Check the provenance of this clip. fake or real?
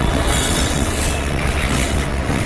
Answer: fake